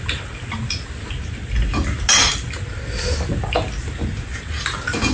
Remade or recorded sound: recorded